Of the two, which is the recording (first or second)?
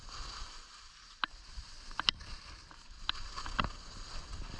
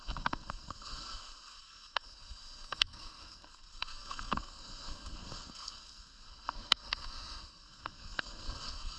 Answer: first